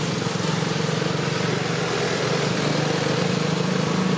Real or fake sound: real